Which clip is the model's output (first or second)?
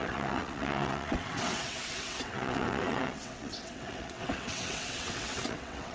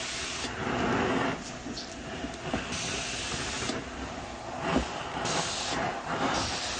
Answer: first